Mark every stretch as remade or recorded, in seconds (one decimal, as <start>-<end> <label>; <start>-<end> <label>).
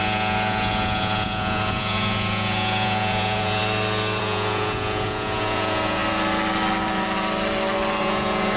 0.0-3.6 remade; 3.6-4.2 recorded; 4.2-6.0 remade; 6.0-8.0 recorded; 8.0-8.6 remade